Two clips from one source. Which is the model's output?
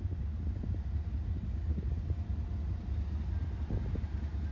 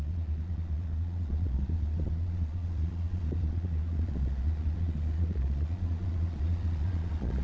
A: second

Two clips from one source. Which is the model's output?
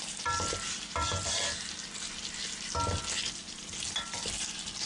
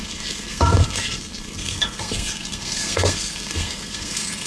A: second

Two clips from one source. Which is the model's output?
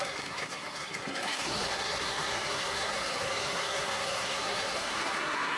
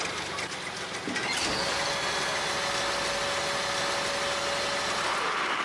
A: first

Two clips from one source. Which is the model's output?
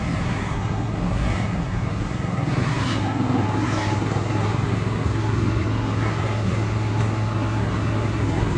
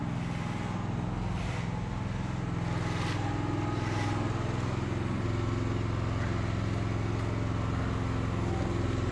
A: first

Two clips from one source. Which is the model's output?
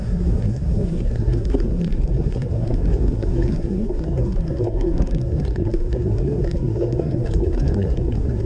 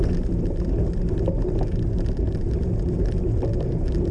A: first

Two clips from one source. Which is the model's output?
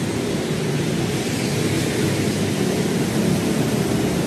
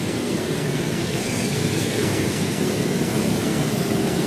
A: second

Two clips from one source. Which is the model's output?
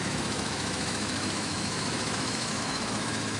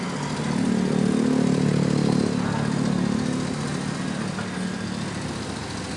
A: first